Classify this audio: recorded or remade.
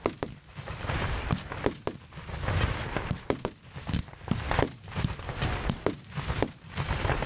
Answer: recorded